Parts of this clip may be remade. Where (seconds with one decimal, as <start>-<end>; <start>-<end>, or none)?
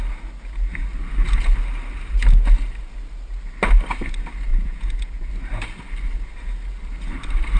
4.5-5.3